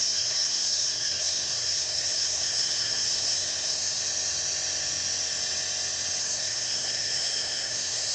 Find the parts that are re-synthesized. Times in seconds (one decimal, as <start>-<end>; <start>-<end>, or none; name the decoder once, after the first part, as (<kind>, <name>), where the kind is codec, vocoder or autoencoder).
0.0-4.0 (codec, SNAC); 6.2-8.1